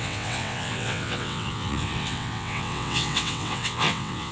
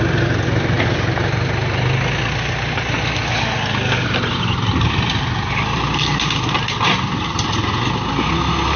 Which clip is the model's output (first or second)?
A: first